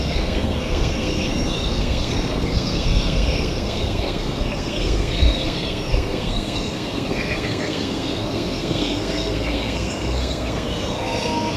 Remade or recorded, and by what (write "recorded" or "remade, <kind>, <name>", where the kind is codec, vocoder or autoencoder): remade, codec, SNAC